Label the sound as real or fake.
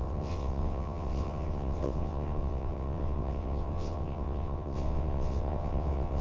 fake